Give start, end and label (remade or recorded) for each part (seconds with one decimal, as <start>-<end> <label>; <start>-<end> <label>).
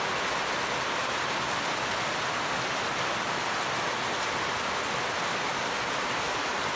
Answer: 0.0-5.5 recorded; 5.5-6.8 remade